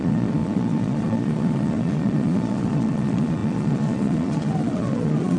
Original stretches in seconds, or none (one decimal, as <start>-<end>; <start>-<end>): none